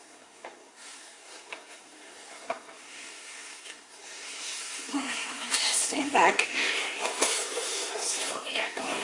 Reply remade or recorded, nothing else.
remade